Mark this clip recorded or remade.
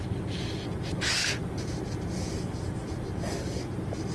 recorded